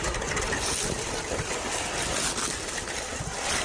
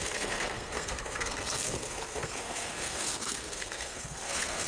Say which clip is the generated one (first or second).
second